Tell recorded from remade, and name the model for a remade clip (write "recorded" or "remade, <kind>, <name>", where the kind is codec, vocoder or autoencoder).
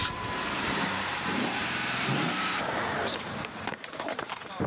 remade, vocoder, BigVGAN v2